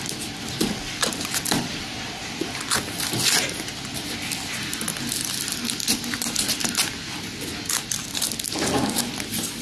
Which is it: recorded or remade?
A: recorded